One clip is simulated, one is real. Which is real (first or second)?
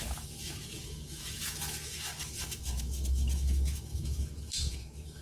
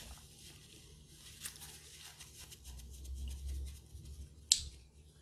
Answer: second